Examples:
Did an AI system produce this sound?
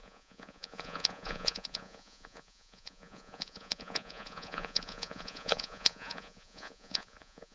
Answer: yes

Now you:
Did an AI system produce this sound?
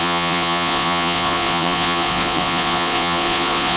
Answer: yes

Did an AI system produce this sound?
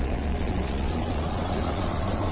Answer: yes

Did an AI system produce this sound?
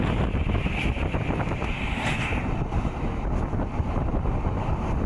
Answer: no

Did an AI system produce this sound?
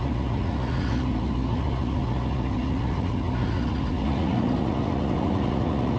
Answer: yes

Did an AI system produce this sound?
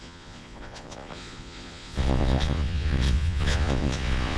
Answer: yes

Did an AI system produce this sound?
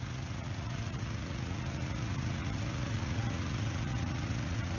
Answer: yes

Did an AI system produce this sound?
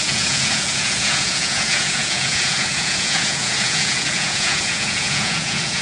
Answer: yes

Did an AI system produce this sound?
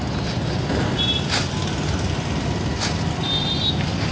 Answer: no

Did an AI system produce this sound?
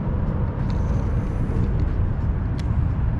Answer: no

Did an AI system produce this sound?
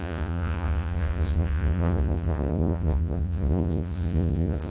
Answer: yes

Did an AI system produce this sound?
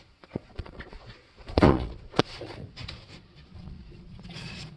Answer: yes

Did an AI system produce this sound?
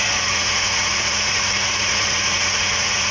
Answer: yes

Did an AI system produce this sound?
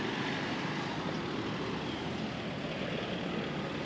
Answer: no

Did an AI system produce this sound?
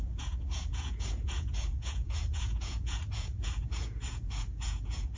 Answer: yes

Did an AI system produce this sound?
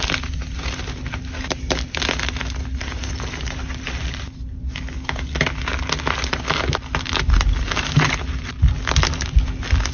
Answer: no